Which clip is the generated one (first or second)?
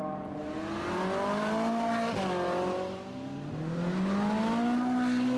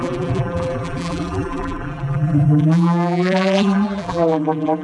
second